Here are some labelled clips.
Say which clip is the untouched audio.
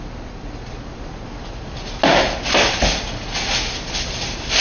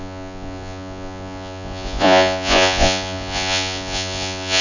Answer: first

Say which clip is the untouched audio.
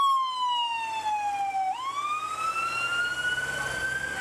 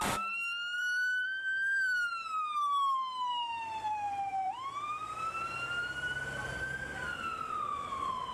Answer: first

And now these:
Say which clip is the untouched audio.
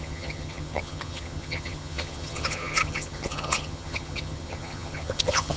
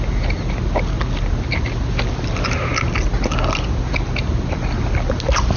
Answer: second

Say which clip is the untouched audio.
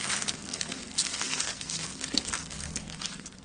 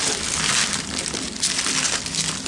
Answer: second